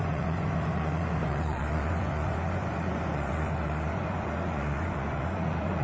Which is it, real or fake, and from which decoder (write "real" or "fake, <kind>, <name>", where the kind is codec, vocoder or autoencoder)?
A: fake, vocoder, Vocos